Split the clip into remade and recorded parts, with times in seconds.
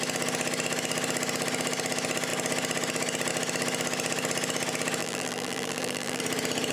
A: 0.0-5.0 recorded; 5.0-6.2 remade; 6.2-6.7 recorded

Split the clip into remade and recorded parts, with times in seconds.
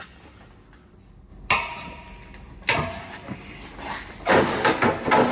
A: 0.0-5.3 recorded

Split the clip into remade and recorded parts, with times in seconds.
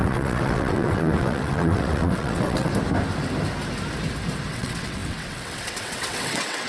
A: 0.0-2.7 remade; 2.7-4.5 recorded; 4.5-6.7 remade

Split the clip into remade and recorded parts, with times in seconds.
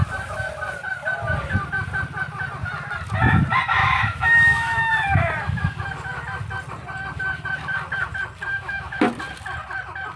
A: 0.0-3.8 recorded; 3.8-4.9 remade; 4.9-8.5 recorded; 8.5-9.0 remade; 9.0-10.2 recorded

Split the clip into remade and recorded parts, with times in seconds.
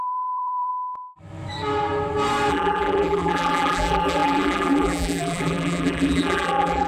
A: 0.0-0.7 remade; 0.7-2.5 recorded; 2.5-6.9 remade